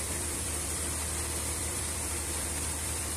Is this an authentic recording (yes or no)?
no